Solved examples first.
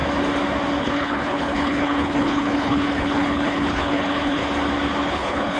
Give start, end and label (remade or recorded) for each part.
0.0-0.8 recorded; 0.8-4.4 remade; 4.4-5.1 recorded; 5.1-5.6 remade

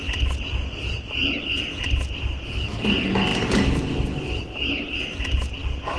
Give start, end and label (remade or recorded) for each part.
0.0-6.0 recorded

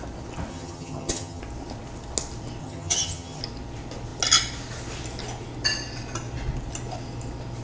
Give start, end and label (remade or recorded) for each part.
0.0-0.5 recorded; 0.5-1.4 remade; 1.4-2.6 recorded; 2.6-3.4 remade; 3.4-7.6 recorded

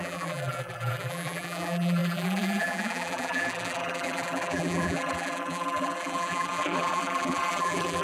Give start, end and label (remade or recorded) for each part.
0.0-8.0 remade

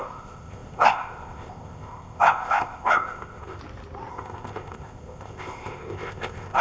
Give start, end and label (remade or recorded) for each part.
0.0-3.6 remade; 3.6-4.1 recorded; 4.1-6.6 remade

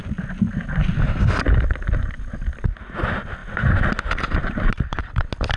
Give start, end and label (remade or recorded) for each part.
0.0-5.6 recorded

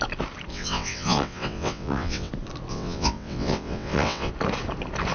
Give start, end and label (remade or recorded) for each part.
0.0-0.5 recorded; 0.5-2.3 remade; 2.3-2.7 recorded; 2.7-4.3 remade; 4.3-5.1 recorded